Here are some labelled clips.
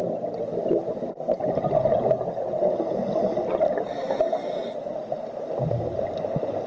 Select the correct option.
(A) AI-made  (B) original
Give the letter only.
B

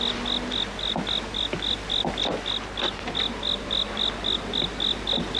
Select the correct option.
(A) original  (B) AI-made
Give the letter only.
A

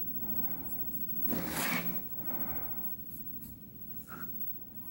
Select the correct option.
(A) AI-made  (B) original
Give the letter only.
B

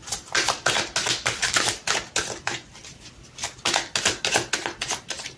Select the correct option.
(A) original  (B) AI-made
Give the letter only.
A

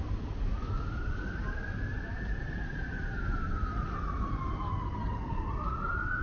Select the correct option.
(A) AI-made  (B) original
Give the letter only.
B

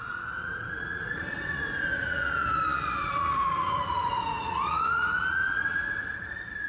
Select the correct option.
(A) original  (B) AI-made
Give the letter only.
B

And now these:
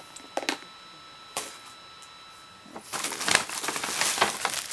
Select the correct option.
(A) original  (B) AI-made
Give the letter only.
A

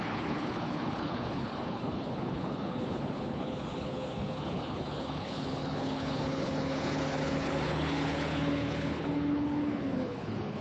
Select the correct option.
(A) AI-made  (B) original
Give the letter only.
A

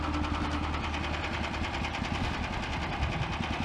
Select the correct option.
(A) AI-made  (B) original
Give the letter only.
B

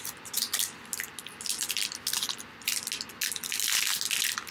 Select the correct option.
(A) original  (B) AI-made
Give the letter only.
A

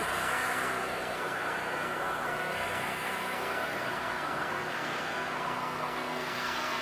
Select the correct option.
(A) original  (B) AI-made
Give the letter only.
B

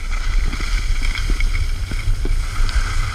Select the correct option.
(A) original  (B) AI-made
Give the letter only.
A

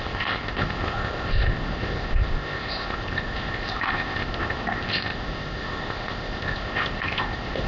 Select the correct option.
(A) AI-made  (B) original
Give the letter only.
A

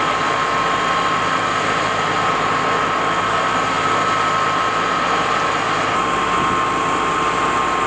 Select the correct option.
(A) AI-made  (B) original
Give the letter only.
B